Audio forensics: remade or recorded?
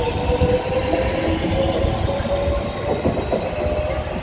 recorded